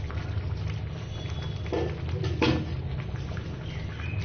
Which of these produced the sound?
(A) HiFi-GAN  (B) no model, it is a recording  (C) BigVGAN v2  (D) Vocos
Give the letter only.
B